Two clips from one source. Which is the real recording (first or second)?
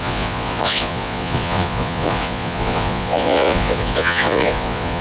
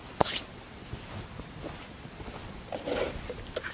second